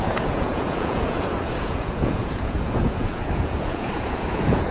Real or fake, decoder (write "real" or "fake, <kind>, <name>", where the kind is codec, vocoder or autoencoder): fake, vocoder, Vocos